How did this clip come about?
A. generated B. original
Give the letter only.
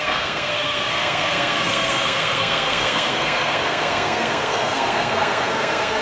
A